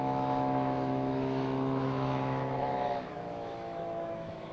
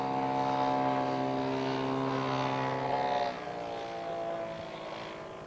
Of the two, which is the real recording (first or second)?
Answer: second